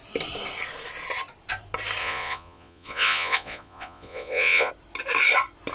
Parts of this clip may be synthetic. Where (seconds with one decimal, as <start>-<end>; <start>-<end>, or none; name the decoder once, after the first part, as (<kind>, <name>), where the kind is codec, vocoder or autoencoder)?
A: 2.0-4.7 (vocoder, Vocos)